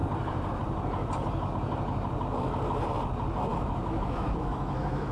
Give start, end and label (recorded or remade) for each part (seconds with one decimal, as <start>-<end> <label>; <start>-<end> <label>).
0.0-3.5 recorded; 3.5-5.1 remade